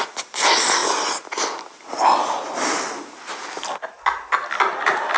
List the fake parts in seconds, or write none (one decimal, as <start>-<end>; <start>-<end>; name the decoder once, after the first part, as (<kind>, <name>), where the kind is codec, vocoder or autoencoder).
none